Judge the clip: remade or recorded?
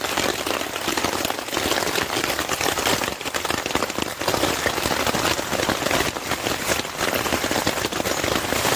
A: recorded